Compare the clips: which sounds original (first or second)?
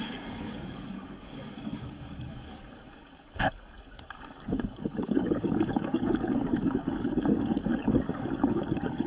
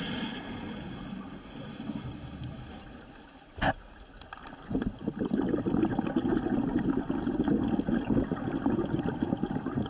second